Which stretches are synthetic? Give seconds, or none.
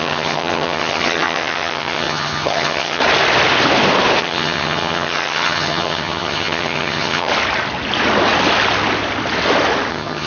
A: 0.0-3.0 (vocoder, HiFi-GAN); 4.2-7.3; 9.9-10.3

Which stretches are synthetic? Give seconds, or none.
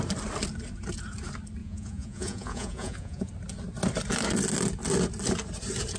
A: 1.6-3.3 (vocoder, Vocos)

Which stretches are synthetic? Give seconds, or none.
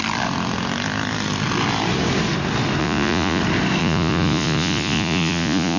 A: 2.8-3.4 (vocoder, Vocos); 3.8-5.8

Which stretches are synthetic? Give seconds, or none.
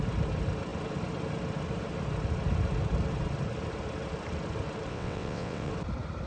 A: 4.9-5.7 (vocoder, WaveNeXt)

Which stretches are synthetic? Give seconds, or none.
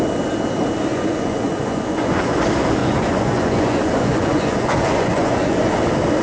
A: 0.9-2.4 (vocoder, Vocos); 2.8-5.7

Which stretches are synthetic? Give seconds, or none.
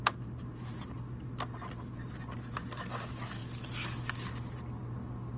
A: none